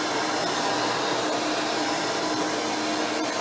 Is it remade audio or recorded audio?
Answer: recorded